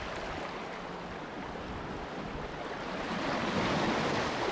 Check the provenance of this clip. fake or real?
real